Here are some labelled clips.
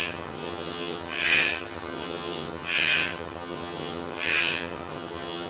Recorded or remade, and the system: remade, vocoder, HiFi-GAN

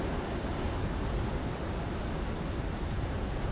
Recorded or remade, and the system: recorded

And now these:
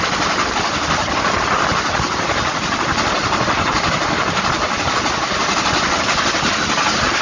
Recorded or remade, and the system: recorded